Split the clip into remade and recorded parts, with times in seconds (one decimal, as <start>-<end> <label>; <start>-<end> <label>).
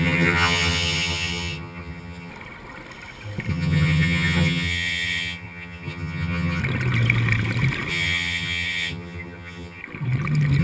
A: 0.0-2.3 remade; 2.3-3.5 recorded; 3.5-6.6 remade; 6.6-7.9 recorded; 7.9-9.8 remade; 9.8-10.6 recorded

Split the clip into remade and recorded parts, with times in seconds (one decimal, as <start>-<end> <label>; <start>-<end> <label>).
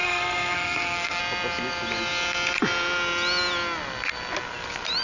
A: 0.0-1.2 remade; 1.2-5.0 recorded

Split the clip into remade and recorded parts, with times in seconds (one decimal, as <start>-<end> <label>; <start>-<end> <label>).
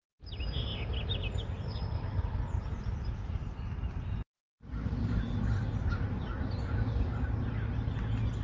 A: 0.0-2.8 recorded; 2.8-6.7 remade; 6.7-8.4 recorded